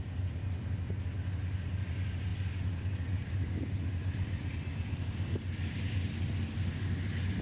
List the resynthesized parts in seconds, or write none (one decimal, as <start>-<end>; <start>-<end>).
none